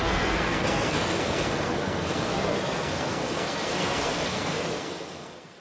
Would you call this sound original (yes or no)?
no